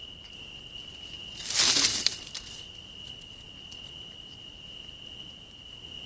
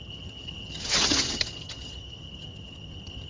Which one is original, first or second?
first